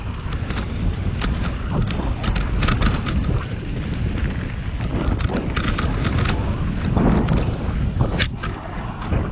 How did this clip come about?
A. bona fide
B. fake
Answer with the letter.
A